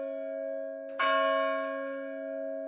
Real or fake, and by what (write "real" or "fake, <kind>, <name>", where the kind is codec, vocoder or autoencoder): real